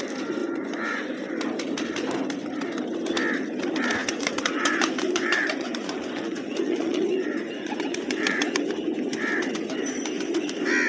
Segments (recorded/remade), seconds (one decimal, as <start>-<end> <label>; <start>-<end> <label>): 0.0-0.4 recorded; 0.4-1.3 remade; 1.3-4.0 recorded; 4.0-8.6 remade; 8.6-10.9 recorded